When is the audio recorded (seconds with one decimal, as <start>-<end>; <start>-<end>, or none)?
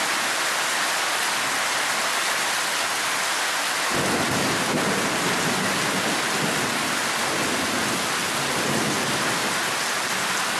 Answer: 0.0-10.6